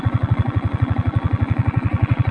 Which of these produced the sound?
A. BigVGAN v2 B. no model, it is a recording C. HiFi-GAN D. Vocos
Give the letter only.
D